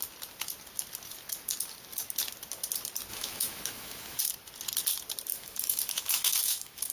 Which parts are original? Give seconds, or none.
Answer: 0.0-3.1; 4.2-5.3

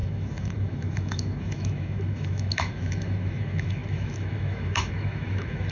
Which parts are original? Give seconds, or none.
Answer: none

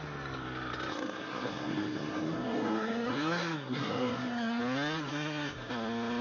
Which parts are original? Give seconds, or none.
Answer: 0.0-0.9; 4.6-5.1; 5.7-6.2